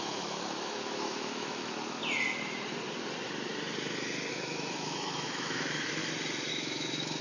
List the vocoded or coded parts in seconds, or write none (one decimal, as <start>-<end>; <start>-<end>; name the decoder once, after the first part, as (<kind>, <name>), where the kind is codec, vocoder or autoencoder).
0.0-2.0 (autoencoder, DAC-VAE); 4.3-6.0; 6.5-7.2